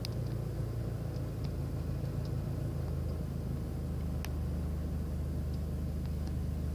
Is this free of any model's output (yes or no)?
yes